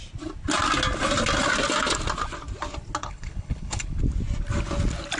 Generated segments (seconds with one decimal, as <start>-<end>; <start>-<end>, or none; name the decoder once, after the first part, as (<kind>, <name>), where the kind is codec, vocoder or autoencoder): 3.0-4.0 (codec, HILCodec)